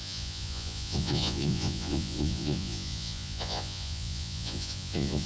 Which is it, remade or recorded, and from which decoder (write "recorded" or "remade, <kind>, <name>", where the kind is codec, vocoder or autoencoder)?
remade, vocoder, Vocos